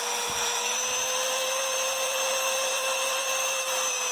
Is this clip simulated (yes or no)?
yes